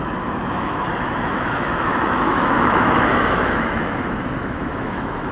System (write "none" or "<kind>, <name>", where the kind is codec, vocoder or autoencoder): autoencoder, DAC-VAE